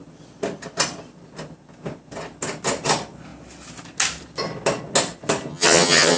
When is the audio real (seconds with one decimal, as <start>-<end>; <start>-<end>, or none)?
0.0-5.5